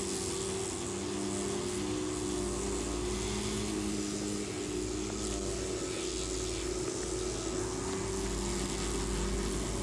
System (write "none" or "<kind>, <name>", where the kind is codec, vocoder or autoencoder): none